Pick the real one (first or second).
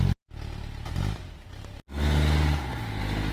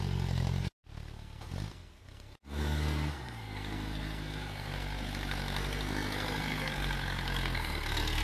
first